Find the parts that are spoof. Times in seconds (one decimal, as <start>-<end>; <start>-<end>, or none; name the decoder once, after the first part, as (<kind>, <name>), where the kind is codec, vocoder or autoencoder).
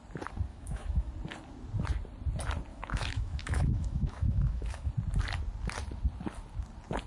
0.5-1.1 (autoencoder, DAC-VAE); 2.7-4.9